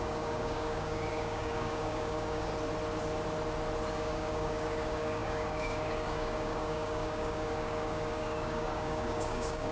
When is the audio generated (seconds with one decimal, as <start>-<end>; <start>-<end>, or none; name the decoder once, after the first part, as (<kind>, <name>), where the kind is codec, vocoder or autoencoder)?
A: 0.0-2.5 (codec, DAC); 3.9-9.7